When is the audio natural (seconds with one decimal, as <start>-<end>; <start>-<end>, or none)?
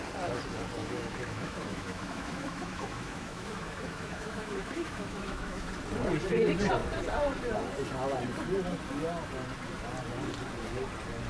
0.0-0.8; 5.7-11.3